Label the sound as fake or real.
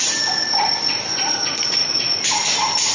real